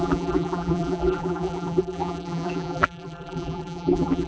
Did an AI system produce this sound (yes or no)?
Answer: yes